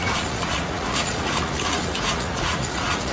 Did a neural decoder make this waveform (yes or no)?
yes